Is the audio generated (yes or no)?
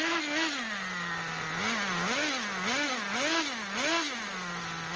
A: no